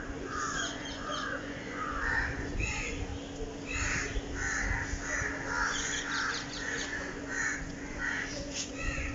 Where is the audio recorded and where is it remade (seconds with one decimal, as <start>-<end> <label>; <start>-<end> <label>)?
0.0-3.1 remade; 3.1-5.7 recorded; 5.7-9.1 remade